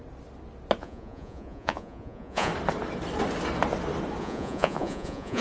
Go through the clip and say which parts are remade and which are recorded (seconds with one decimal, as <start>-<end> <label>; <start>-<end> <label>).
0.0-0.8 recorded; 0.8-2.5 remade; 2.5-4.2 recorded; 4.2-5.4 remade